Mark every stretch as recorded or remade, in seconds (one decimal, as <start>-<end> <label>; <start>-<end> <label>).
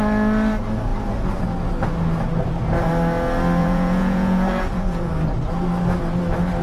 0.0-3.6 recorded; 3.6-5.1 remade; 5.1-6.6 recorded